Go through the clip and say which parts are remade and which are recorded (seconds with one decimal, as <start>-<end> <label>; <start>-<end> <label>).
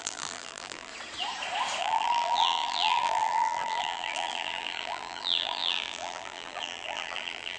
0.0-0.9 remade; 0.9-1.8 recorded; 1.8-7.6 remade